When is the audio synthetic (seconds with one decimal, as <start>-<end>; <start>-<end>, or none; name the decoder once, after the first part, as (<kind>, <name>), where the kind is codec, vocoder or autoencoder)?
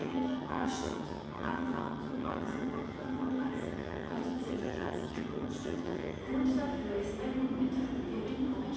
0.0-6.2 (vocoder, HiFi-GAN)